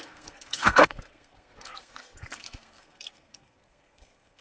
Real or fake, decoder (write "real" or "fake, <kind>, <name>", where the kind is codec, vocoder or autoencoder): fake, codec, SNAC